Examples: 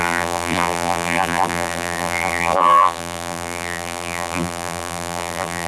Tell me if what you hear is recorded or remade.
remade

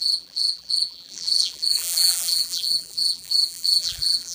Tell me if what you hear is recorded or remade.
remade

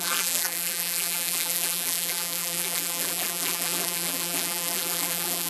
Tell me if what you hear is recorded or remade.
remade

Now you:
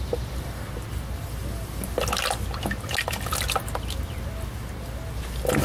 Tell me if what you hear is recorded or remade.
recorded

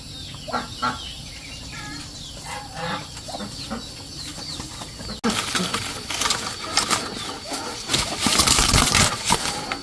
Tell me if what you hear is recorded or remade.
recorded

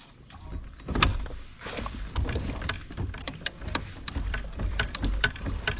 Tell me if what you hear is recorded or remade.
remade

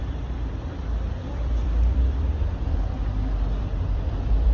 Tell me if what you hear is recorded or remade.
remade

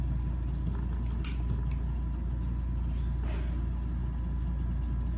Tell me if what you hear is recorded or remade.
recorded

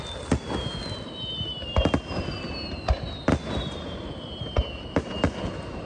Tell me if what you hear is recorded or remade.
recorded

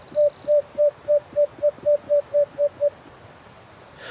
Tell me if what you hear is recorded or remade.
recorded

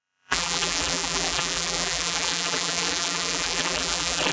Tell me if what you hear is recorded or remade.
remade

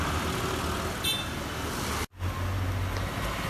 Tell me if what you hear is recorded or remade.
recorded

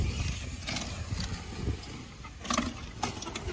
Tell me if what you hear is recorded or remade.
recorded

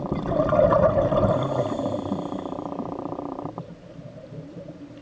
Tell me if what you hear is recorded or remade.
remade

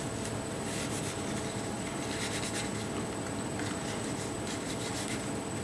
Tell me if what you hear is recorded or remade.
remade